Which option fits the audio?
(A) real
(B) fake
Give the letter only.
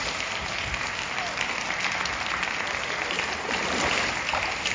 A